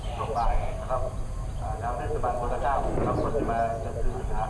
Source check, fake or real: real